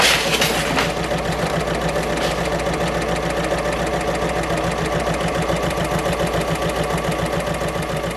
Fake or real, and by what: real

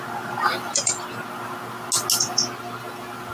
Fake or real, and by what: real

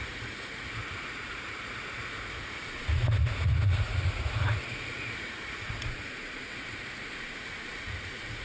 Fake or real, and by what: fake, vocoder, Vocos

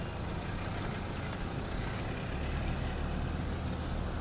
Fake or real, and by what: real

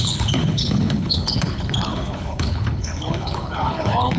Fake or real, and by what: fake, codec, HILCodec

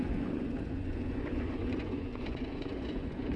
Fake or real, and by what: fake, vocoder, Vocos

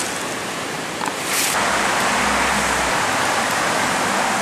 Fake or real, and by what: real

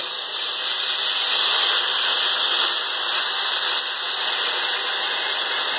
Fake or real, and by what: real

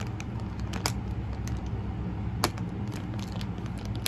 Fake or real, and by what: real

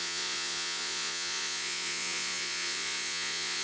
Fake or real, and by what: fake, vocoder, Vocos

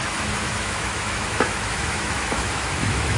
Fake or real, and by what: fake, autoencoder, DAC-VAE